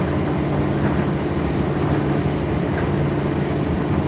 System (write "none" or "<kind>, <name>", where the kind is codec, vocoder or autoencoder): none